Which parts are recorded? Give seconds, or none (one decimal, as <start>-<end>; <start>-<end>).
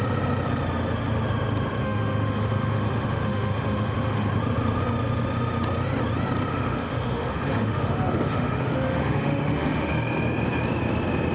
0.0-1.8; 4.3-6.5; 9.9-11.3